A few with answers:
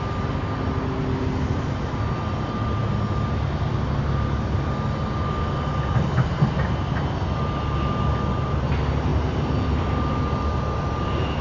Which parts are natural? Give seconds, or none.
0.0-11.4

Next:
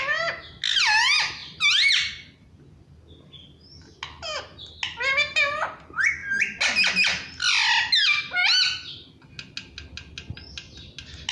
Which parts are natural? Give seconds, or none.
0.0-11.3

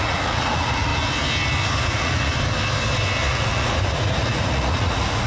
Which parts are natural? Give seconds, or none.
0.9-1.8; 2.3-3.3

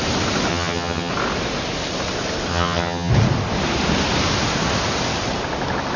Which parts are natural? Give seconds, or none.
0.0-0.5; 1.1-2.5; 3.1-6.0